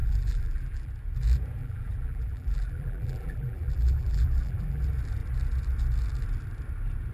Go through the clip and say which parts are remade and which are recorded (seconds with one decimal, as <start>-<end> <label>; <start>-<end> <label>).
0.0-0.9 remade; 0.9-1.6 recorded; 1.6-4.8 remade; 4.8-7.1 recorded